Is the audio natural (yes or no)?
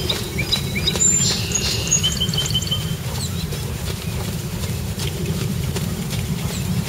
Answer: no